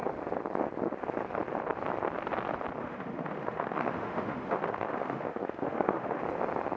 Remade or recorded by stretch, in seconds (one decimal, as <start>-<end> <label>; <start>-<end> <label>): 0.0-2.8 recorded; 2.8-6.2 remade; 6.2-6.8 recorded